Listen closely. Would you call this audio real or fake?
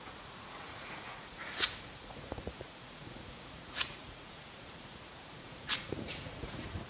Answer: fake